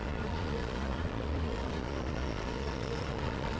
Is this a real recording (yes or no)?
no